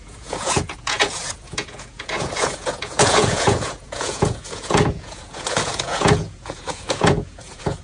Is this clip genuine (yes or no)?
no